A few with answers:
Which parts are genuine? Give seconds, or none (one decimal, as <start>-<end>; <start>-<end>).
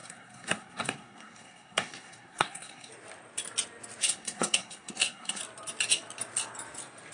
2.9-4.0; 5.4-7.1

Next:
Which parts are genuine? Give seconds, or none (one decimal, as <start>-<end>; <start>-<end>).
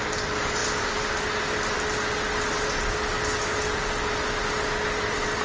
0.0-5.4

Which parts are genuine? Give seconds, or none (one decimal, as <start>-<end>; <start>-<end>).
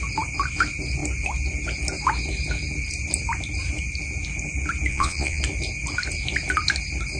0.0-4.9; 5.4-7.2